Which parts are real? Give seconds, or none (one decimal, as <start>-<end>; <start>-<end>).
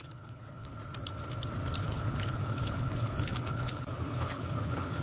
0.7-1.8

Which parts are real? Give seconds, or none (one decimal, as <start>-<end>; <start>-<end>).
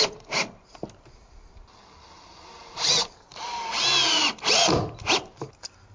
0.0-5.9